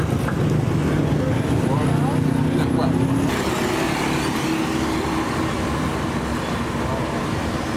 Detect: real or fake real